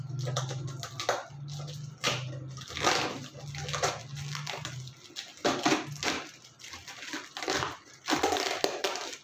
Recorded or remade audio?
recorded